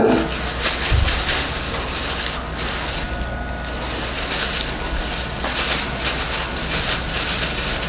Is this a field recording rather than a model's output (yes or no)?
yes